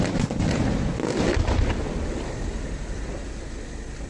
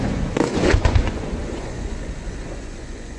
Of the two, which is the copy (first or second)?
second